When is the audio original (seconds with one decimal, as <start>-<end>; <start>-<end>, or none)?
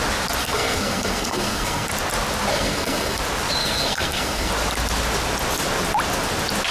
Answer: 0.0-0.4; 1.9-2.5; 3.2-3.6; 4.5-6.7